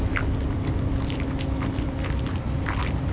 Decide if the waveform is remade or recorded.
recorded